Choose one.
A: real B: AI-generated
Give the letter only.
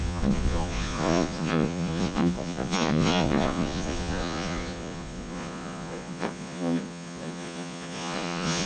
B